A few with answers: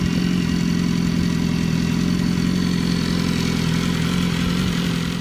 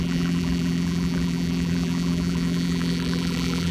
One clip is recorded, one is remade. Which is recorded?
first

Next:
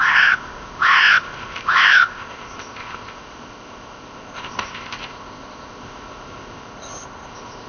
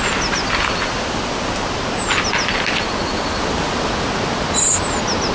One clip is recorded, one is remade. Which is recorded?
second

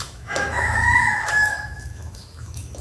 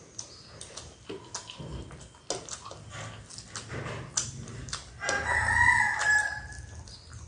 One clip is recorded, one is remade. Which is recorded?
second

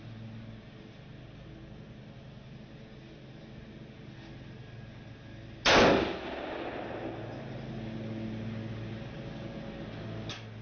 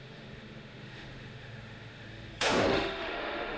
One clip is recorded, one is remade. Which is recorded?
first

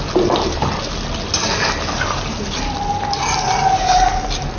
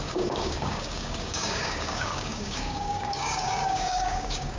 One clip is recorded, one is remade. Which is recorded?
first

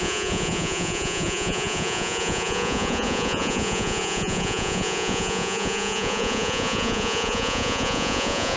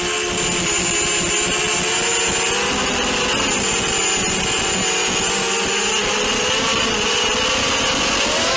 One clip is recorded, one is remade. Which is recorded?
second